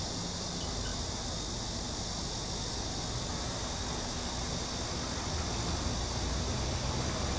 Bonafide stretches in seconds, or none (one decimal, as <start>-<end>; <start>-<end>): 0.0-7.4